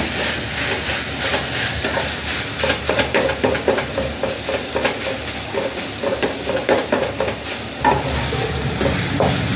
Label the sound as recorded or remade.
recorded